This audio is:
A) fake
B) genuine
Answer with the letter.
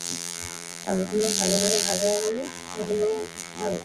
A